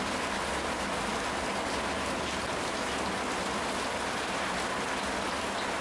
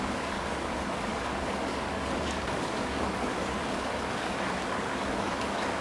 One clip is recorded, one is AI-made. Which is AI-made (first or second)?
second